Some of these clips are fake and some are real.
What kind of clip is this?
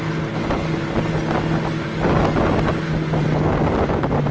real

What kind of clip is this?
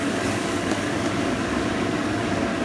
fake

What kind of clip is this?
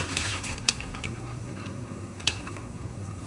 fake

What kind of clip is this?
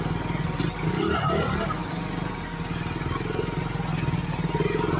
real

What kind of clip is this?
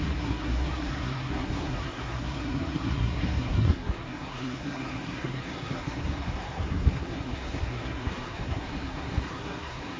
fake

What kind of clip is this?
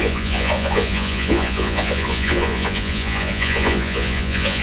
fake